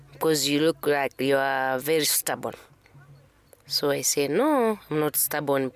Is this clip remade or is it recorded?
recorded